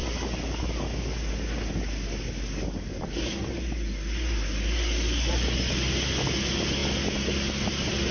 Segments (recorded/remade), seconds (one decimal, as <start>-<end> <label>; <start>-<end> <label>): 0.0-8.1 recorded